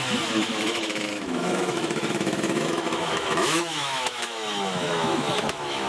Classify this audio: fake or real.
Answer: fake